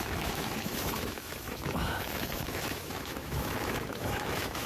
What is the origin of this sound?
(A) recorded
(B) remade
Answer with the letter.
B